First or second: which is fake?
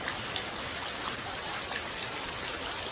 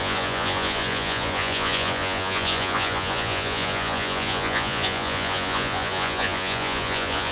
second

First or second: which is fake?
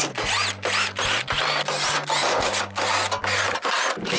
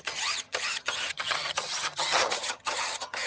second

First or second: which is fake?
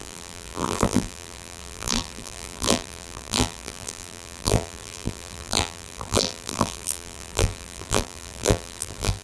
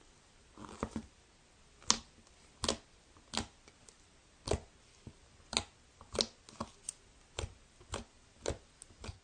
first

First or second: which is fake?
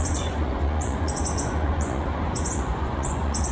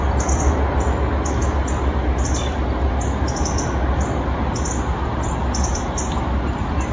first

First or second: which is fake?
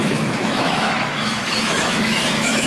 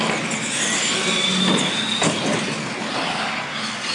first